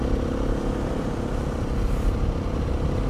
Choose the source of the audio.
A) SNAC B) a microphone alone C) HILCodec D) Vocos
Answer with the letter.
B